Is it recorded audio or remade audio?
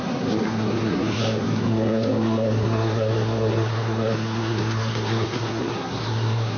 remade